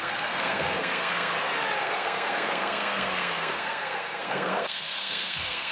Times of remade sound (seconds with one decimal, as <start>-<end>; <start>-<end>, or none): 0.0-1.3; 1.8-5.7